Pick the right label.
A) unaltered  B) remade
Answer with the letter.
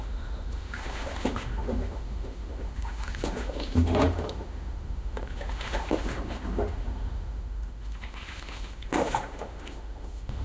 B